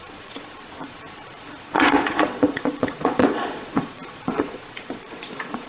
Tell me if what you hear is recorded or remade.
remade